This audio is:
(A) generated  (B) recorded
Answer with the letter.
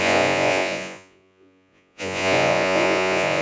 A